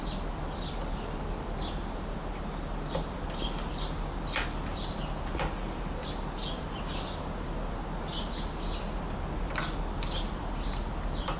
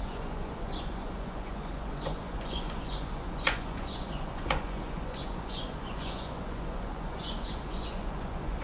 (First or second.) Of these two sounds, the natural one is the first